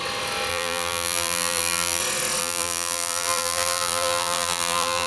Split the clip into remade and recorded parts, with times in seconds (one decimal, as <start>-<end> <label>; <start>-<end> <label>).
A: 0.0-0.5 recorded; 0.5-2.0 remade; 2.0-2.4 recorded; 2.4-5.1 remade